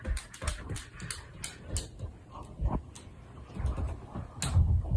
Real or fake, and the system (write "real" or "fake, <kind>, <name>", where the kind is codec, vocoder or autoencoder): real